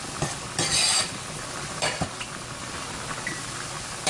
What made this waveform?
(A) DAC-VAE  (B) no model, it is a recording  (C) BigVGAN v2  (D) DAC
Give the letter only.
C